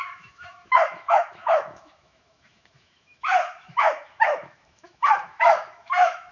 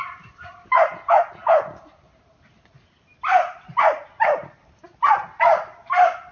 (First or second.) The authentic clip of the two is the second